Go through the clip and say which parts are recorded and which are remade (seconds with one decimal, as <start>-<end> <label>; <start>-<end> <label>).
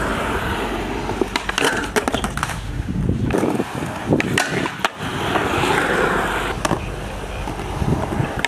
0.0-2.4 recorded; 2.4-3.0 remade; 3.0-8.5 recorded